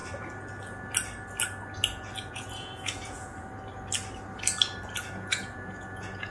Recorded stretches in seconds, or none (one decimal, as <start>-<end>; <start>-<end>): 0.0-2.3; 3.3-5.1